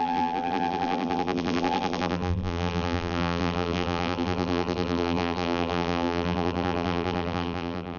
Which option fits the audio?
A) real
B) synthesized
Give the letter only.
B